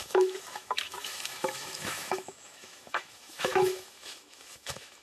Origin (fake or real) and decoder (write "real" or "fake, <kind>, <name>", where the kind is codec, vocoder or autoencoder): fake, autoencoder, DAC-VAE